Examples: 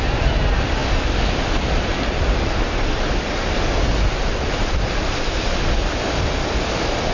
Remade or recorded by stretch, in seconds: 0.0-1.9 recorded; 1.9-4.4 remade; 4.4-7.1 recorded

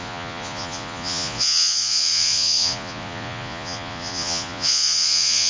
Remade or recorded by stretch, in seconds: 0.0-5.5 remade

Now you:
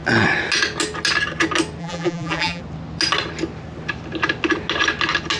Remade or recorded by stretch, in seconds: 0.0-1.8 recorded; 1.8-2.6 remade; 2.6-5.4 recorded